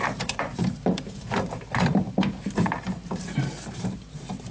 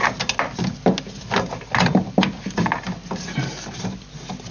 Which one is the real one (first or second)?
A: second